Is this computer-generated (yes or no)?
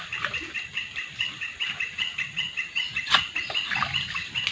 no